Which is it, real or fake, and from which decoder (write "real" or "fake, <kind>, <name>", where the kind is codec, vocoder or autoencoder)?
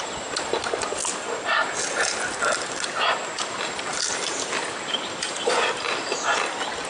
real